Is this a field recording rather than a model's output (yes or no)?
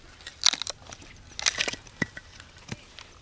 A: yes